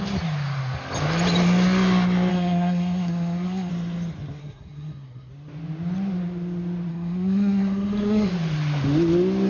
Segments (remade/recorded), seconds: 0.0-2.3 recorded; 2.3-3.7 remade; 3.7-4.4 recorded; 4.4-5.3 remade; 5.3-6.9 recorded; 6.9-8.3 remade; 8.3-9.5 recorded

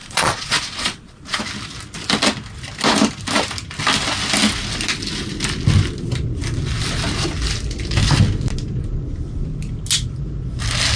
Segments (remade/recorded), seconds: 0.0-1.4 remade; 1.4-11.0 recorded

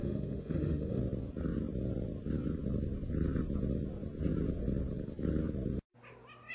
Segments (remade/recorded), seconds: 0.0-1.0 remade; 1.0-6.5 recorded

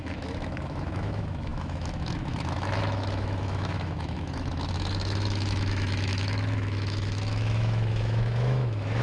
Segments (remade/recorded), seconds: 0.0-9.0 remade

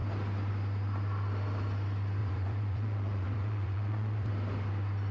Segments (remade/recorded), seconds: 0.0-2.2 recorded; 2.2-4.3 remade; 4.3-5.1 recorded

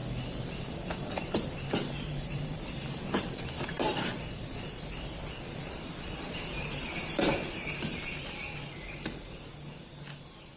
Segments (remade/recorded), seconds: 0.0-0.9 recorded; 0.9-3.9 remade; 3.9-5.5 recorded; 5.5-9.5 remade; 9.5-10.2 recorded; 10.2-10.6 remade